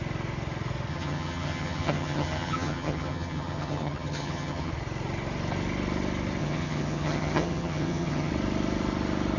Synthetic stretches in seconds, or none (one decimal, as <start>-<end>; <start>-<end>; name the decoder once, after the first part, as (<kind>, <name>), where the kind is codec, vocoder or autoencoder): 0.9-4.7 (vocoder, HiFi-GAN); 6.4-8.3